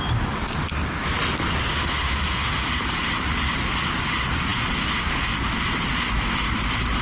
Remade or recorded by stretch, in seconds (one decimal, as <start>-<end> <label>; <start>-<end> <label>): 0.0-1.7 recorded; 1.7-2.7 remade; 2.7-7.0 recorded